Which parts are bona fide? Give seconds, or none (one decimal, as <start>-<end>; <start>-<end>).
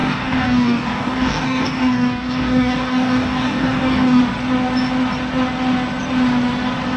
4.2-7.0